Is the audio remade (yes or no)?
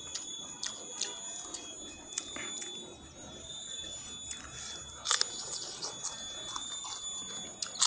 no